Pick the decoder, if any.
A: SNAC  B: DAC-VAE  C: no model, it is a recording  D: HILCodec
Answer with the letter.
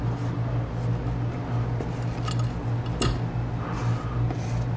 C